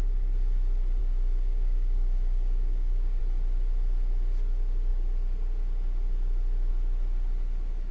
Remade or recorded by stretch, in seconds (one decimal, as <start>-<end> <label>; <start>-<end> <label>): 0.0-1.0 recorded; 1.0-3.2 remade; 3.2-7.9 recorded